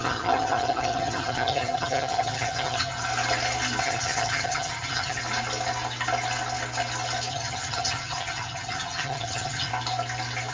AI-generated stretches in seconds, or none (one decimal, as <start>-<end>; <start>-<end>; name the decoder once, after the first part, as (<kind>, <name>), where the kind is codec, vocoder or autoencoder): 0.0-3.1 (vocoder, HiFi-GAN); 3.8-5.2; 7.3-9.7